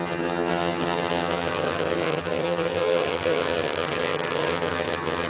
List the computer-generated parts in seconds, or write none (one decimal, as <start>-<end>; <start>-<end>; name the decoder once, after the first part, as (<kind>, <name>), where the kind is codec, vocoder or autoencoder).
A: 0.0-5.3 (vocoder, HiFi-GAN)